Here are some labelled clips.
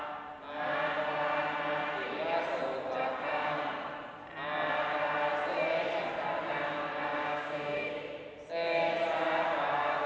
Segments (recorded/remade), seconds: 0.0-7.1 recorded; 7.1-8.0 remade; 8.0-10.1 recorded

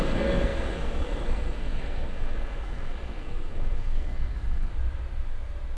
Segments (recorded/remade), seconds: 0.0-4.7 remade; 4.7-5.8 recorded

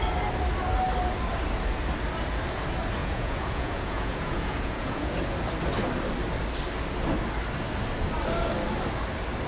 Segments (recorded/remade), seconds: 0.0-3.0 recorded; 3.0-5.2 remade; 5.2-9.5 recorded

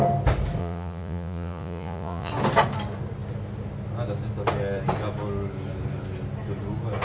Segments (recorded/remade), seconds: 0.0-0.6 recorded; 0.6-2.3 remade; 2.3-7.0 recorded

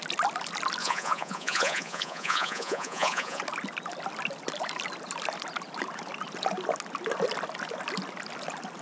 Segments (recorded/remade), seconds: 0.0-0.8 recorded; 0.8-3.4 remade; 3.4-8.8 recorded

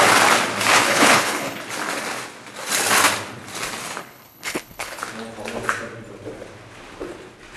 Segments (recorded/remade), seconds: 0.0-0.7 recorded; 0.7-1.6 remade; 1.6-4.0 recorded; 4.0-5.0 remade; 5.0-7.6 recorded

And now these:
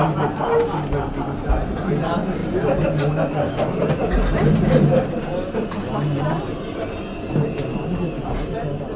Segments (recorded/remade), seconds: 0.0-9.0 recorded